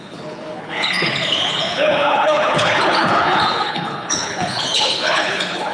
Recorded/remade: remade